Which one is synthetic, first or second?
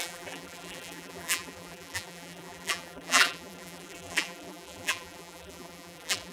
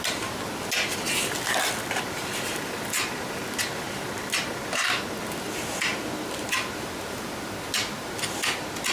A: first